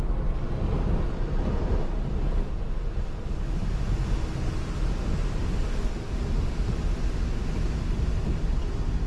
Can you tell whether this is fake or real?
real